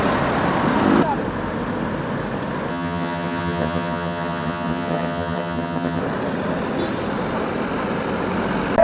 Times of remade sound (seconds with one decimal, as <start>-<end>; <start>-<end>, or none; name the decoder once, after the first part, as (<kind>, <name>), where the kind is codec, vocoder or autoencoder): 2.7-6.0 (vocoder, HiFi-GAN)